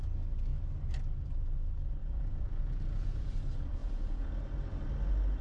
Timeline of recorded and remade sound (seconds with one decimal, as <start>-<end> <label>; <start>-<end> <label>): 0.0-2.0 recorded; 2.0-3.3 remade; 3.3-3.8 recorded; 3.8-4.3 remade; 4.3-5.4 recorded